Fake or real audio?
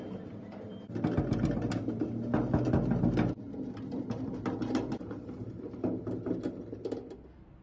real